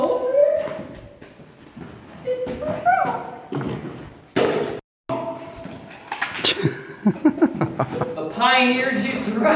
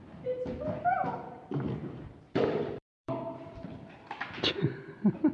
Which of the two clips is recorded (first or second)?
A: first